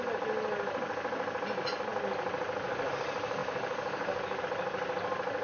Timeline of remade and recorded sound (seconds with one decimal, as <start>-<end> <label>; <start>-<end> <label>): 0.0-5.4 recorded